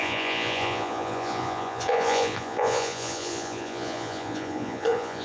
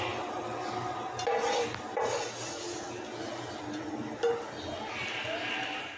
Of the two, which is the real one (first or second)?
second